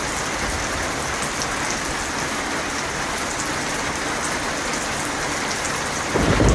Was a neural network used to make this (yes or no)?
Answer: no